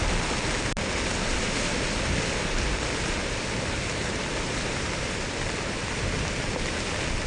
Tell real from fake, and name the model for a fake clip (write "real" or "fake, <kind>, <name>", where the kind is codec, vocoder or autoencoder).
real